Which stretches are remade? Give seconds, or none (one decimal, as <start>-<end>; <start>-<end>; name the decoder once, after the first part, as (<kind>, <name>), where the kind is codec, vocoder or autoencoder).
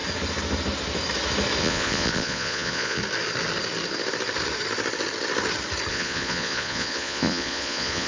1.6-3.0 (vocoder, Vocos); 5.9-8.1